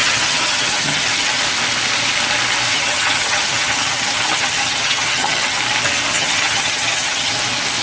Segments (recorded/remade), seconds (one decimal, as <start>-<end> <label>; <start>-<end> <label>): 0.0-1.4 remade; 1.4-2.7 recorded; 2.7-5.6 remade; 5.6-6.1 recorded; 6.1-7.3 remade; 7.3-7.8 recorded

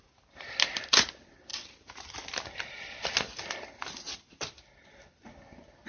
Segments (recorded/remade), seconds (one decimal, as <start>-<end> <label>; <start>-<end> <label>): 0.0-5.9 recorded

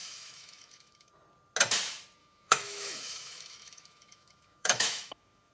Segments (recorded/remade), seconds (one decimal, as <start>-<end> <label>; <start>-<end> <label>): 0.0-1.1 remade; 1.1-2.2 recorded; 2.2-5.5 remade